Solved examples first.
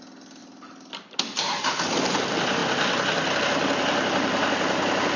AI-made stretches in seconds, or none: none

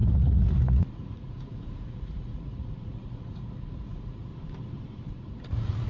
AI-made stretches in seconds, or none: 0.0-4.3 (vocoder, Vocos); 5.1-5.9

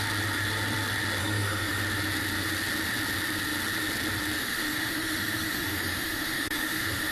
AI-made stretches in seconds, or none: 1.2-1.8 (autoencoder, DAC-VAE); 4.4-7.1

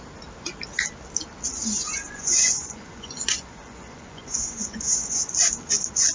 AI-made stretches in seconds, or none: 1.6-5.3 (vocoder, Vocos)

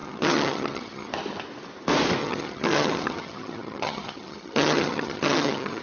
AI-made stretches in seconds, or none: 0.0-1.1 (vocoder, HiFi-GAN); 2.2-5.8